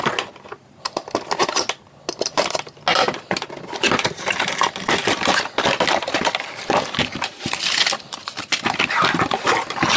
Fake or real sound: real